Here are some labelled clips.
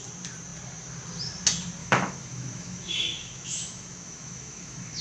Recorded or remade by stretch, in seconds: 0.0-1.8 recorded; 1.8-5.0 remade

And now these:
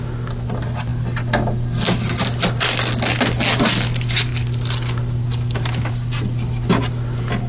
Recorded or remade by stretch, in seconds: 0.0-7.5 recorded

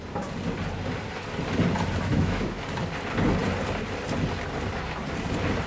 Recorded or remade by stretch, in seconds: 0.0-2.1 recorded; 2.1-2.6 remade; 2.6-5.7 recorded